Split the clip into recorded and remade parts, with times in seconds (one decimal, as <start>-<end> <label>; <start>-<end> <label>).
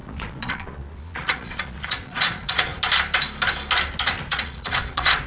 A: 0.0-2.7 remade; 2.7-4.3 recorded; 4.3-5.3 remade